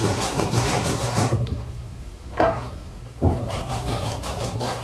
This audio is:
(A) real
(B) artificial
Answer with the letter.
B